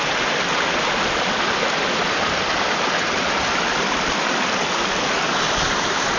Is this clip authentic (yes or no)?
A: yes